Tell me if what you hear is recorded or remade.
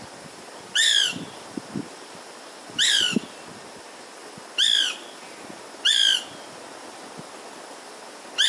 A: recorded